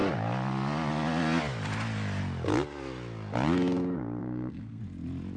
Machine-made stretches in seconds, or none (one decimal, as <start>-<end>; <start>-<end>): 4.2-4.8